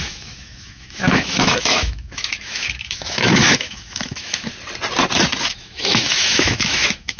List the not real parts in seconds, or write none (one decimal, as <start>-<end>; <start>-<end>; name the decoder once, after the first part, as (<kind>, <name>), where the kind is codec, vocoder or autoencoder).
0.0-4.5 (autoencoder, DAC-VAE); 5.4-7.2

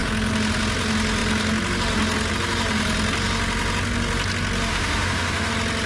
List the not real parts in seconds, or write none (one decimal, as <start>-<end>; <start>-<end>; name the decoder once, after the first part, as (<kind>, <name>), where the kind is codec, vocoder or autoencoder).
4.7-5.5 (autoencoder, DAC-VAE)

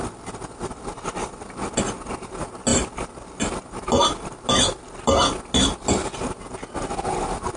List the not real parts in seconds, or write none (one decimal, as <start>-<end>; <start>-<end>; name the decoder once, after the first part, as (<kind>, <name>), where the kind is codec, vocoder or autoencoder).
none

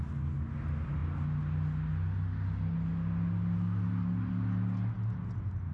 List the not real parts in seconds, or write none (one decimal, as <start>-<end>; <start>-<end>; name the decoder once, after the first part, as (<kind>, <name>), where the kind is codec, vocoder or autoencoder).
none

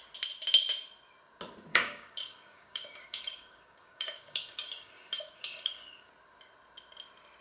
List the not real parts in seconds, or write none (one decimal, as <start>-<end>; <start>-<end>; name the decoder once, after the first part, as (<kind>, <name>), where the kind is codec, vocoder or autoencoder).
1.7-6.1 (codec, DAC)

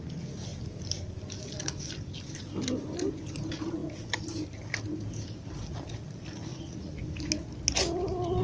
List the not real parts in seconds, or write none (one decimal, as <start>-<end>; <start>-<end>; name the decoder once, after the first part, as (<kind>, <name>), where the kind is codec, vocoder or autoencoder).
6.5-7.0 (vocoder, Vocos)